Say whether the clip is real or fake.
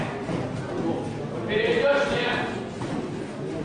real